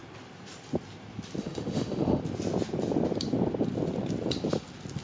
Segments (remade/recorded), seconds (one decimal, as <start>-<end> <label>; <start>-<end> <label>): 0.0-1.4 recorded; 1.4-2.2 remade; 2.2-5.0 recorded